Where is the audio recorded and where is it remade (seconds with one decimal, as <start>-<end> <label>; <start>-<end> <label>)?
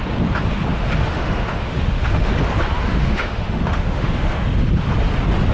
0.0-0.7 recorded; 0.7-2.3 remade; 2.3-2.9 recorded; 2.9-4.7 remade; 4.7-5.5 recorded